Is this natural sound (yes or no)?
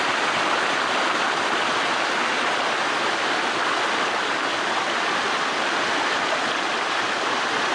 yes